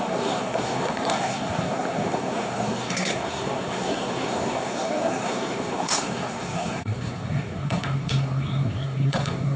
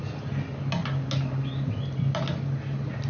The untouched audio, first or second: second